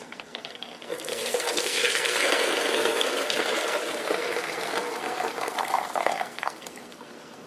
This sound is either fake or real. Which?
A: fake